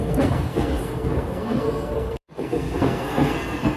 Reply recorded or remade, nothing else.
remade